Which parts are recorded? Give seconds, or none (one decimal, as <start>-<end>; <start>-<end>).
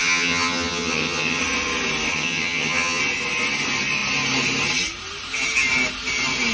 1.4-2.1; 3.0-6.5